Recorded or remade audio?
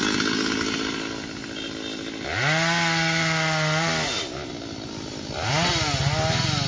recorded